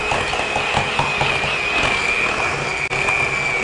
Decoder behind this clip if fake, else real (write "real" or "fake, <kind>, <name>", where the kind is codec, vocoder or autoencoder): real